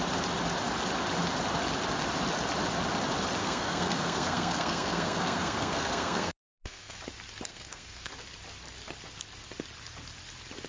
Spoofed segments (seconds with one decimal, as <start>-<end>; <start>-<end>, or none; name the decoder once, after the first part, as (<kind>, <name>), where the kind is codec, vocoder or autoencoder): 3.4-7.0 (codec, SNAC); 7.5-8.1